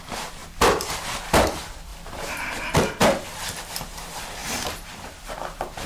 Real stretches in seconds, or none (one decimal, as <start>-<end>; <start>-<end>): 0.0-1.9; 2.4-4.4; 5.2-5.9